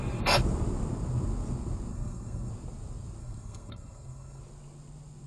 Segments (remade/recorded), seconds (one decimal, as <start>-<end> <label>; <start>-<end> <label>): 0.0-1.9 recorded; 1.9-2.5 remade; 2.5-3.2 recorded; 3.2-4.4 remade; 4.4-5.3 recorded